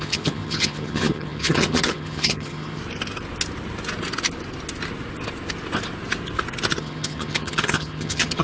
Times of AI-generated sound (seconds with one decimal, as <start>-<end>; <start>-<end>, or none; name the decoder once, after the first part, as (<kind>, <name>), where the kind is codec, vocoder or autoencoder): 0.0-2.8 (vocoder, HiFi-GAN); 6.8-8.4